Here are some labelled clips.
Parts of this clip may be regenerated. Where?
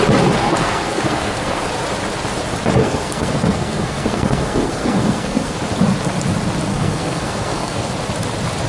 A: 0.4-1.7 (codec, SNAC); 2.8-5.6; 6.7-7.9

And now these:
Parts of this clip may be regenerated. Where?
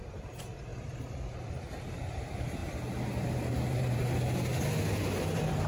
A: 0.0-2.6 (vocoder, BigVGAN v2); 3.2-5.7